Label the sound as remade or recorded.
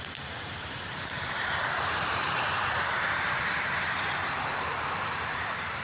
remade